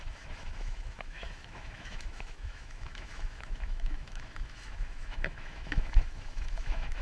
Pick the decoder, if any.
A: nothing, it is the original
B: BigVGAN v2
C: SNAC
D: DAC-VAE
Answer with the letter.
D